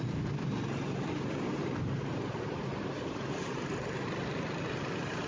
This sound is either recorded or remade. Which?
recorded